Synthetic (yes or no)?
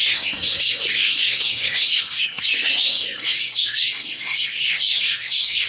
yes